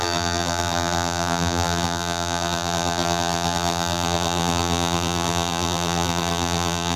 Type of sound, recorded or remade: remade